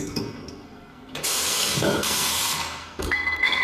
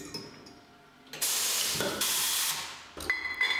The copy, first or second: first